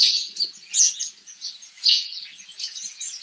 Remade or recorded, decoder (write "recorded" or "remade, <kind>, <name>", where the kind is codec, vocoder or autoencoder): remade, vocoder, Vocos